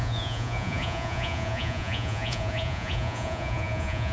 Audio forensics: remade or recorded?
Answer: remade